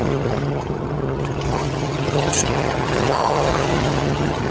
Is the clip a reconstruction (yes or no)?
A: yes